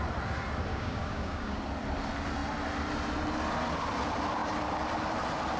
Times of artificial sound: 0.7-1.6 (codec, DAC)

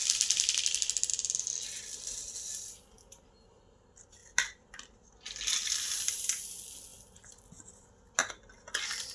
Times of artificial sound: 0.0-1.1 (vocoder, BigVGAN v2); 4.2-6.1; 6.9-8.3

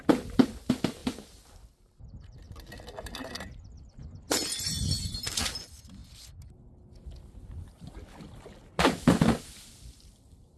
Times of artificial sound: none

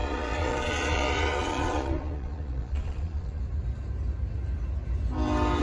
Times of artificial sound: 0.0-3.4 (vocoder, Vocos)